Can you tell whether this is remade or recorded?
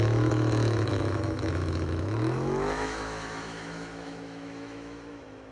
remade